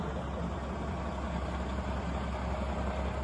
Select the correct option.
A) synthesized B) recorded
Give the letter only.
B